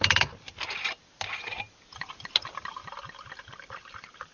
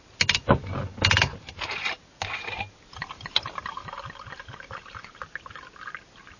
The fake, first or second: first